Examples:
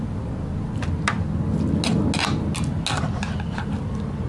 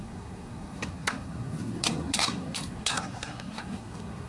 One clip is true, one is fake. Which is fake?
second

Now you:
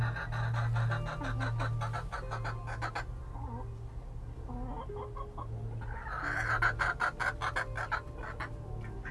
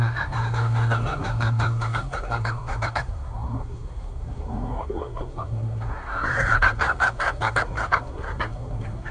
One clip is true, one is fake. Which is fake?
second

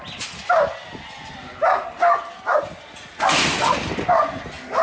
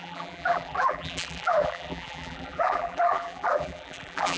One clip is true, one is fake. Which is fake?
second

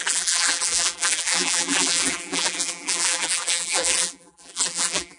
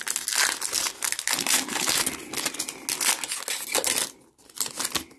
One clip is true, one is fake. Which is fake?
first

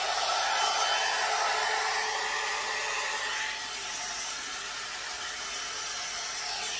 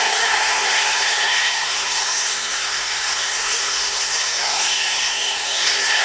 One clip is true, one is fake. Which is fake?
second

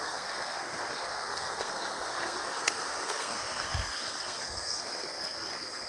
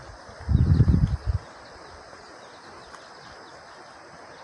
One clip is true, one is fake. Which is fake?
first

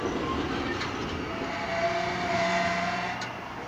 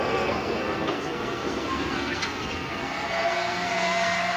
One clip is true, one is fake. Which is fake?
second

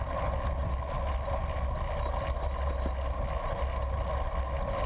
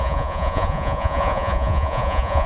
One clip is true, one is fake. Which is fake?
second